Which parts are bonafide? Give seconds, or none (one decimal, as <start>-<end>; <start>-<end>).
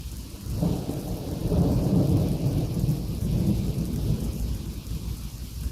0.0-5.7